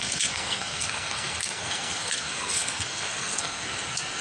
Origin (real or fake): fake